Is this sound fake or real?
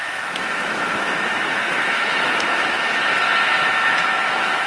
fake